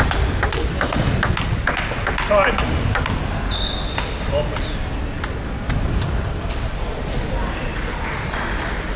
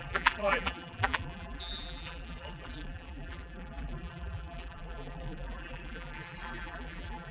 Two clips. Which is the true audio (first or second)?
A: first